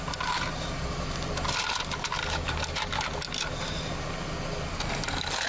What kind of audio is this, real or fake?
real